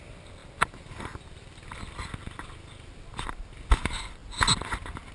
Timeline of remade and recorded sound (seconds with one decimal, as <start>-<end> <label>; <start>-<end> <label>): 0.0-5.1 recorded